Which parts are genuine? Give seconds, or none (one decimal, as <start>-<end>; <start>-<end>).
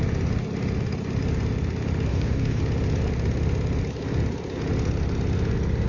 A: 0.0-2.1; 2.6-5.9